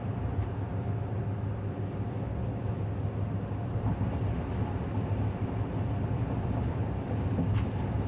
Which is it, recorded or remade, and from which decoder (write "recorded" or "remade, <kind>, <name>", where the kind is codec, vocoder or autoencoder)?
recorded